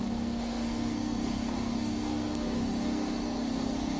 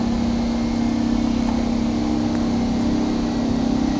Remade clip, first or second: first